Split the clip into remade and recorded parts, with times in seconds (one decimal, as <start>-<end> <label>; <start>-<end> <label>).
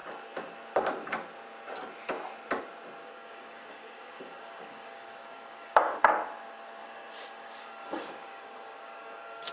0.0-3.0 recorded; 3.0-6.0 remade; 6.0-6.8 recorded; 6.8-9.5 remade